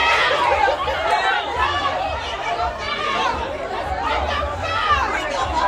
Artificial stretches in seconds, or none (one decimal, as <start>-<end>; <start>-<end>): 0.0-0.6; 1.0-4.4